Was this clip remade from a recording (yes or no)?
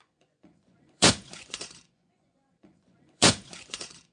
yes